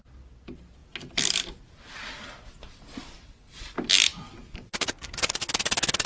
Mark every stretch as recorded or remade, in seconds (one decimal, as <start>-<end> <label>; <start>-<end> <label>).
0.0-6.1 recorded